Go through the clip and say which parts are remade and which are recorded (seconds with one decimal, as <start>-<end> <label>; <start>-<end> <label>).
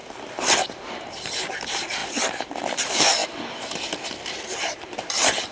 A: 0.0-0.9 recorded; 0.9-2.0 remade; 2.0-2.8 recorded; 2.8-3.2 remade; 3.2-4.5 recorded; 4.5-5.5 remade